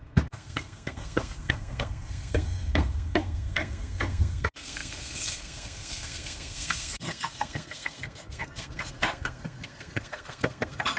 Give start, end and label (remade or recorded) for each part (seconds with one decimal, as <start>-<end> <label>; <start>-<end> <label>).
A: 0.0-11.0 remade